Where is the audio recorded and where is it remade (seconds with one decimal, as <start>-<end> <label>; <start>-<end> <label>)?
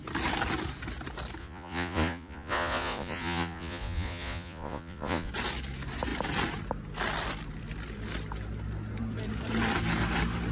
0.0-1.4 recorded; 1.4-5.3 remade; 5.3-10.5 recorded